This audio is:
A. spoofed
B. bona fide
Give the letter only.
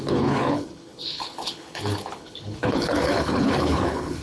A